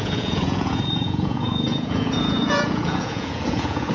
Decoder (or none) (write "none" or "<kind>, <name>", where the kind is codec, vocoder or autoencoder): vocoder, Vocos